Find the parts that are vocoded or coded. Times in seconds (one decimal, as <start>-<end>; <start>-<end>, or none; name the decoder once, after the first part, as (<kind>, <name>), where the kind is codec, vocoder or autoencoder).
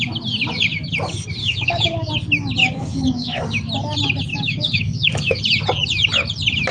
1.4-2.1 (codec, DAC); 2.6-3.4; 4.3-5.4